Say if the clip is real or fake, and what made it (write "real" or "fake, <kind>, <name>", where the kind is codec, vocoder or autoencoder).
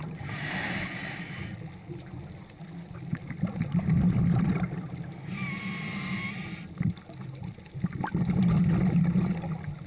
real